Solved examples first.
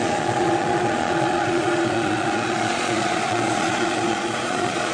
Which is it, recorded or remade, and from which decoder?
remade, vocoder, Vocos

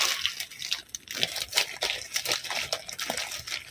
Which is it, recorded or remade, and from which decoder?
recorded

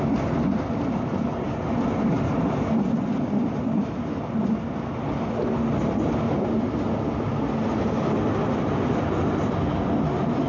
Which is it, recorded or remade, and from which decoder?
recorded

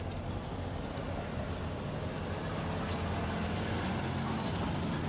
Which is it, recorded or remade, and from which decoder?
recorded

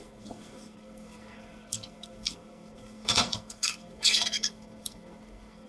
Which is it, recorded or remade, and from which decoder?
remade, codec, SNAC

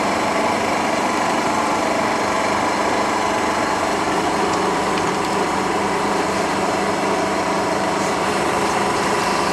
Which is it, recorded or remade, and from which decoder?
remade, vocoder, BigVGAN v2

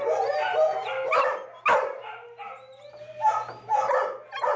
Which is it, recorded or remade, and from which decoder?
recorded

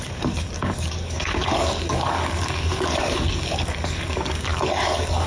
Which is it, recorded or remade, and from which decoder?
remade, codec, DAC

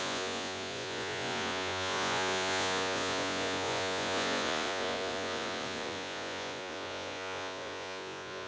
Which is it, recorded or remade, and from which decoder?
remade, vocoder, Vocos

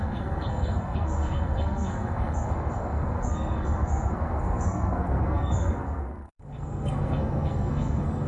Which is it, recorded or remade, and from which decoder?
remade, codec, SNAC